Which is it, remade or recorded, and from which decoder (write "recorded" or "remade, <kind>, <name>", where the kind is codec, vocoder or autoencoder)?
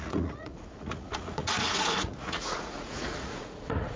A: remade, vocoder, Vocos